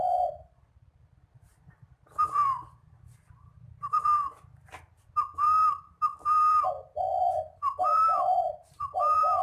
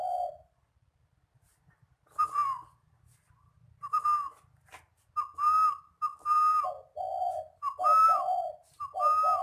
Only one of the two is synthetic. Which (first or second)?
first